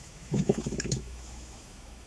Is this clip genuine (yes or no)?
no